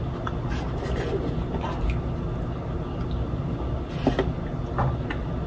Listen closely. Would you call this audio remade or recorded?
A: recorded